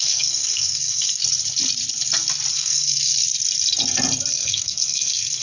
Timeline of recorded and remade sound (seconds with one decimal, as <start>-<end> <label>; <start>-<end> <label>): 0.0-1.2 remade; 1.2-2.5 recorded; 2.5-3.1 remade; 3.1-4.3 recorded; 4.3-5.4 remade